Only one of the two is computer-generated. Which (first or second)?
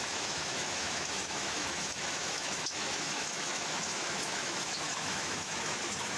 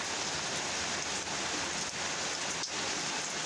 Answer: first